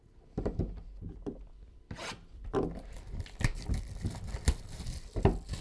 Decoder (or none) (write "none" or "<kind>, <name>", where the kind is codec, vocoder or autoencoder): none